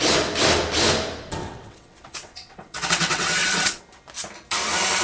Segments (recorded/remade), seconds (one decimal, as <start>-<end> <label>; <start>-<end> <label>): 0.0-1.4 recorded; 1.4-3.8 remade; 3.8-5.0 recorded

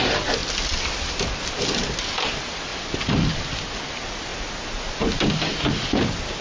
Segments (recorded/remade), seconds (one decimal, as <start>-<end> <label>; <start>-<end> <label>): 0.0-6.4 recorded

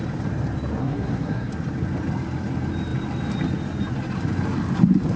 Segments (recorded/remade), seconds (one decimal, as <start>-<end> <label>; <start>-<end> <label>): 0.0-0.8 recorded; 0.8-1.5 remade; 1.5-5.2 recorded